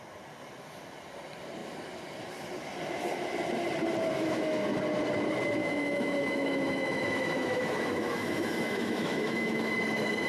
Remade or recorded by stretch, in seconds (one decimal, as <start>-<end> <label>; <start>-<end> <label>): 0.0-4.1 recorded; 4.1-4.8 remade; 4.8-5.6 recorded; 5.6-9.7 remade; 9.7-10.3 recorded